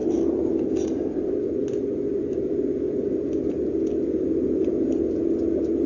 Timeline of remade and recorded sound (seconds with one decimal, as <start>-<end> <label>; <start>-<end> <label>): 0.0-5.9 recorded